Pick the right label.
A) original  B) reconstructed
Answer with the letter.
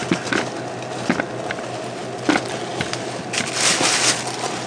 A